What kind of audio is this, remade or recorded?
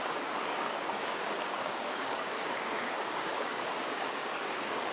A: remade